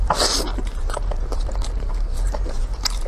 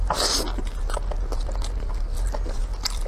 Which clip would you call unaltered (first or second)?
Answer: second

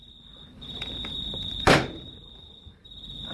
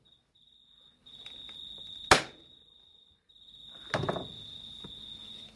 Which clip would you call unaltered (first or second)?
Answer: second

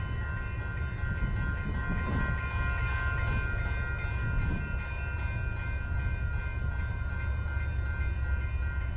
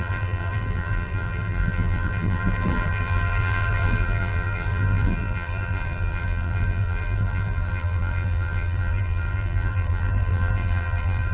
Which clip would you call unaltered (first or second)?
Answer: first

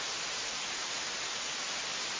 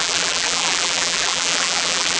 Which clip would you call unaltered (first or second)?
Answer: first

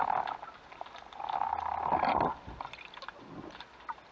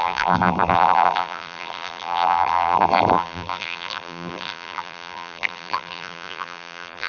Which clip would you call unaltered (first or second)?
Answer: first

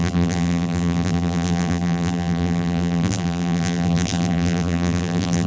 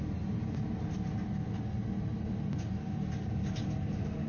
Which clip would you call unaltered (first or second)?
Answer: second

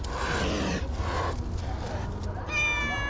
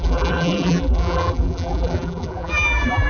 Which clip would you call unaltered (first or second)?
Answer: first